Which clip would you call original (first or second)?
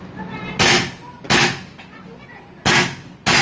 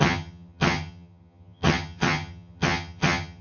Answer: first